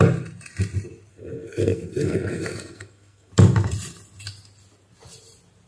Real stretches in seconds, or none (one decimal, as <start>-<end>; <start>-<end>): 0.0-1.1; 3.3-5.7